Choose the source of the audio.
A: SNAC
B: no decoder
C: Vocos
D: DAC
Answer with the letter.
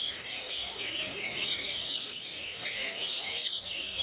D